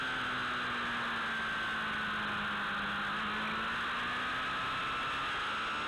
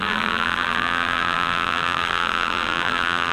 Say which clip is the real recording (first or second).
first